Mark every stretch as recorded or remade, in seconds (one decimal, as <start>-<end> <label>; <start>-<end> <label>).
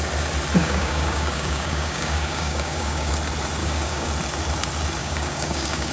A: 0.0-0.6 recorded; 0.6-3.1 remade; 3.1-3.6 recorded; 3.6-4.1 remade; 4.1-5.0 recorded; 5.0-5.9 remade